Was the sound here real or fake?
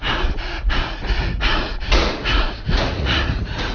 fake